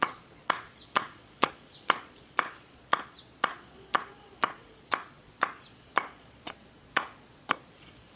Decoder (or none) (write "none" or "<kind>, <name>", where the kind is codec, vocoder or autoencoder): vocoder, Vocos